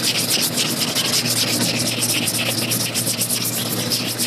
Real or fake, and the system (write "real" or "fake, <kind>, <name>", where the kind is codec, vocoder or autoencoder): real